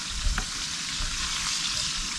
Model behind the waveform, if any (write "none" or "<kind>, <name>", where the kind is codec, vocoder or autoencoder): none